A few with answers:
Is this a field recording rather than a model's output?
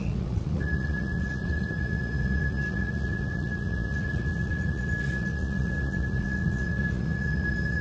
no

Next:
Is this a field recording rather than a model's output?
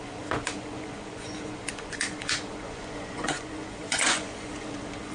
no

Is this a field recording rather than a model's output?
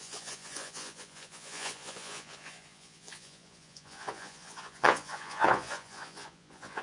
no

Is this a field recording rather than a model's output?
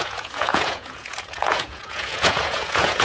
no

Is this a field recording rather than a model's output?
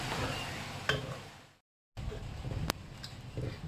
yes